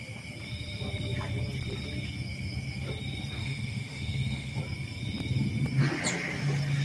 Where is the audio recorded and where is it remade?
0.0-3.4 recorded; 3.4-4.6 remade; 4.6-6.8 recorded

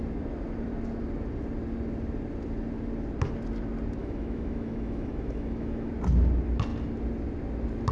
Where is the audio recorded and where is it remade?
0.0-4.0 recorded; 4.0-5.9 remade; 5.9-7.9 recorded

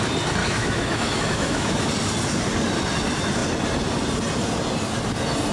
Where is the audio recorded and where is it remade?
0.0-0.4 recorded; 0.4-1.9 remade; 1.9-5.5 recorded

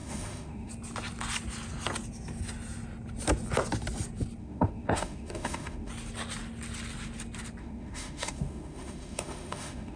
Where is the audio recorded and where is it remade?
0.0-0.7 remade; 0.7-4.4 recorded; 4.4-5.9 remade; 5.9-7.6 recorded; 7.6-10.0 remade

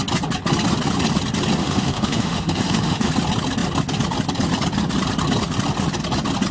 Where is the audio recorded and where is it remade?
0.0-1.6 recorded; 1.6-3.1 remade; 3.1-6.5 recorded

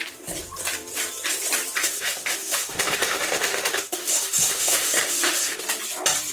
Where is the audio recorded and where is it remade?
0.0-1.8 recorded; 1.8-5.6 remade; 5.6-6.3 recorded